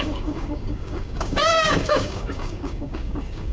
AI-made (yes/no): yes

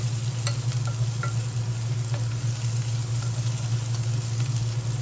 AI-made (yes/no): no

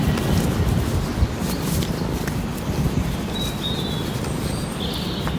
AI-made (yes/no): no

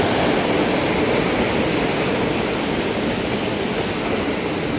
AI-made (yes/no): no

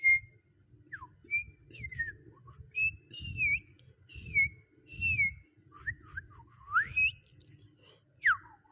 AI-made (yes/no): no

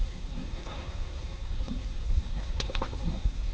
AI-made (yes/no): yes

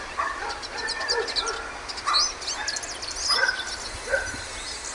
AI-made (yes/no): no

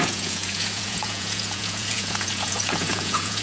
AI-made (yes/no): yes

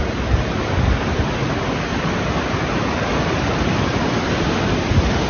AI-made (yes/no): no